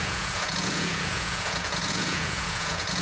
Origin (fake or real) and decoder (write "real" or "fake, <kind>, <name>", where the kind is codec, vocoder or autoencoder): fake, vocoder, Vocos